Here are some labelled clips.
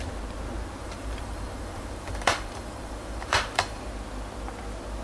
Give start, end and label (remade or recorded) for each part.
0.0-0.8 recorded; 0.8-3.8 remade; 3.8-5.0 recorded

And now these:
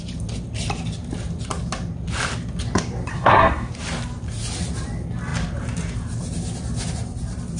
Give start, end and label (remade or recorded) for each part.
0.0-3.1 recorded; 3.1-3.7 remade; 3.7-7.6 recorded

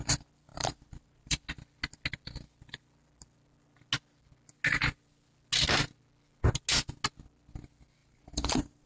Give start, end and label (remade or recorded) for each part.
0.0-0.5 recorded; 0.5-1.5 remade; 1.5-8.0 recorded; 8.0-8.9 remade